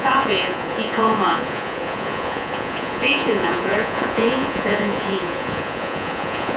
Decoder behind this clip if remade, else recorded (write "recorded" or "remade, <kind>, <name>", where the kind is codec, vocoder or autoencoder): remade, vocoder, Vocos